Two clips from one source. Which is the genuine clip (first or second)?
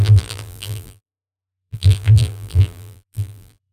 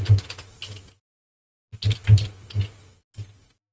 second